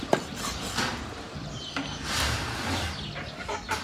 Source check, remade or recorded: recorded